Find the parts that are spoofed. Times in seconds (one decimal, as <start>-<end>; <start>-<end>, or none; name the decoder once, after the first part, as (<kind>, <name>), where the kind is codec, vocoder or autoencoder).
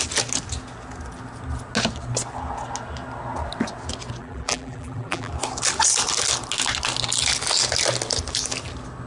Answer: 4.2-5.3 (vocoder, BigVGAN v2)